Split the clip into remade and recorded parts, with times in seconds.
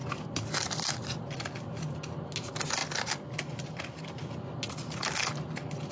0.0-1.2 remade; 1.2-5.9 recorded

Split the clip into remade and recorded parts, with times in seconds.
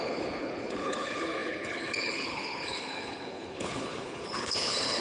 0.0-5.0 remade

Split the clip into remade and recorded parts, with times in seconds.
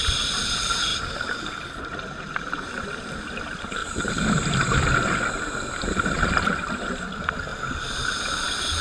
0.0-0.9 remade; 0.9-2.4 recorded; 2.4-3.8 remade; 3.8-5.3 recorded; 5.3-7.5 remade; 7.5-8.3 recorded; 8.3-8.8 remade